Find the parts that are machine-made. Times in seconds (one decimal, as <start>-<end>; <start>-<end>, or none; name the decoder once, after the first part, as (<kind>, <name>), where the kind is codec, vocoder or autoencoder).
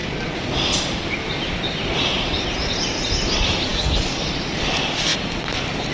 3.7-4.3 (codec, DAC)